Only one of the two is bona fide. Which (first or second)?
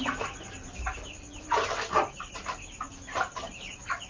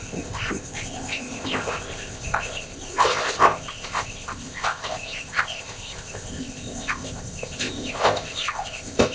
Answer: first